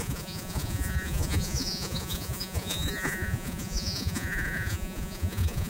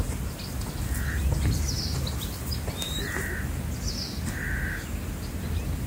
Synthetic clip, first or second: first